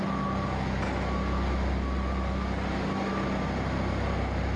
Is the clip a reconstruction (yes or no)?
no